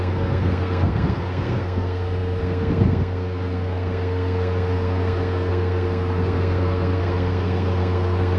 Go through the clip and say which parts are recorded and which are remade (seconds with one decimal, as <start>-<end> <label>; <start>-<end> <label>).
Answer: 0.0-8.4 remade